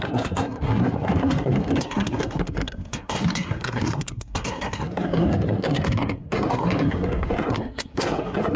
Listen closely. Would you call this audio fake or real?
fake